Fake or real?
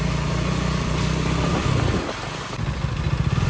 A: real